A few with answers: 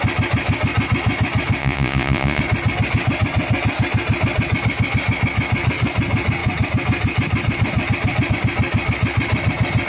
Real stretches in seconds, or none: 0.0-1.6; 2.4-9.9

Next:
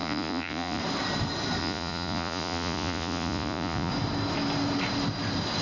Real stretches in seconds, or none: 0.8-1.6; 3.9-5.6

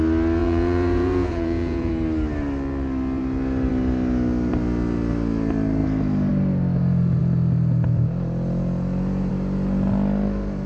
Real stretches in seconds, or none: 0.0-0.4; 1.9-10.7

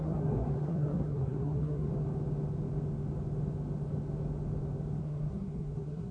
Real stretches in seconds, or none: 1.9-5.0

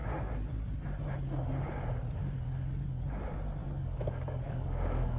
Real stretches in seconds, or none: 0.0-3.6